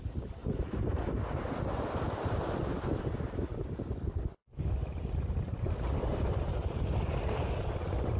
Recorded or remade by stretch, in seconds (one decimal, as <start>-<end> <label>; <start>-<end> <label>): 0.0-8.2 recorded